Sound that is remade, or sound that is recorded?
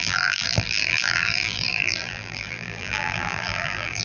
remade